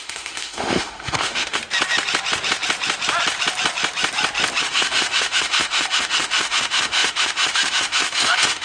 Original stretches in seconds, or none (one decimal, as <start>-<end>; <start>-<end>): 1.6-4.6